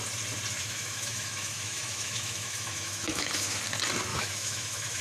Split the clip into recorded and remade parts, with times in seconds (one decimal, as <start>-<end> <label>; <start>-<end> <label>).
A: 0.0-0.6 recorded; 0.6-3.6 remade; 3.6-4.1 recorded; 4.1-5.0 remade